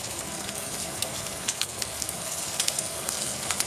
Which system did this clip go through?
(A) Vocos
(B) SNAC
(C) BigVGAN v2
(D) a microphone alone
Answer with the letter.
B